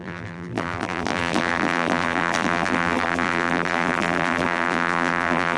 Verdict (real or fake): fake